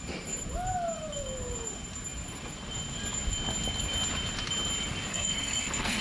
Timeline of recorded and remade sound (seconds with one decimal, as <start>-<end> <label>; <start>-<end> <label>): 0.0-5.1 recorded; 5.1-6.0 remade